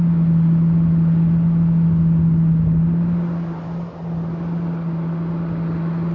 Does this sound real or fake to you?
real